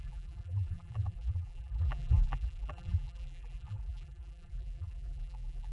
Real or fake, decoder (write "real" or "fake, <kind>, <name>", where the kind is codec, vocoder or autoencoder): fake, vocoder, BigVGAN v2